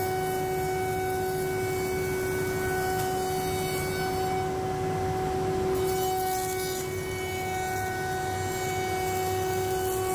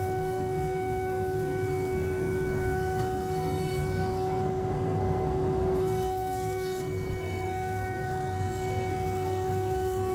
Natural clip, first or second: first